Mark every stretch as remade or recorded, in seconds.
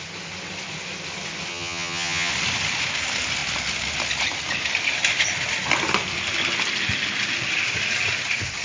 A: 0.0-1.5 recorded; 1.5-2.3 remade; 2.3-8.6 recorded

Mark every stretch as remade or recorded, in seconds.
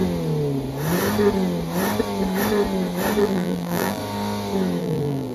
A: 0.0-3.2 recorded; 3.2-4.0 remade; 4.0-4.8 recorded; 4.8-5.3 remade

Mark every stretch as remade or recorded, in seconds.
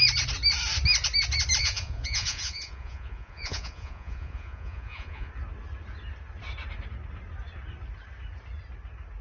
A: 0.0-1.6 recorded; 1.6-5.3 remade; 5.3-9.2 recorded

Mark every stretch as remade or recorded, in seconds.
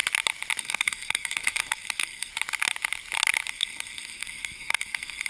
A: 0.0-0.6 recorded; 0.6-2.3 remade; 2.3-3.5 recorded; 3.5-5.3 remade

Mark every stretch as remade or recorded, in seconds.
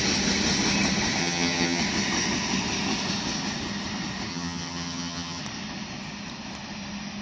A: 0.0-1.2 recorded; 1.2-1.8 remade; 1.8-4.3 recorded; 4.3-5.4 remade; 5.4-7.2 recorded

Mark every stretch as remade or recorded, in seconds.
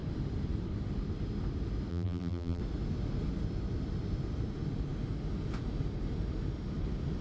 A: 0.0-1.9 recorded; 1.9-2.6 remade; 2.6-7.2 recorded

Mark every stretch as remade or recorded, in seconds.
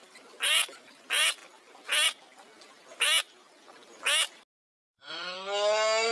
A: 0.0-6.1 recorded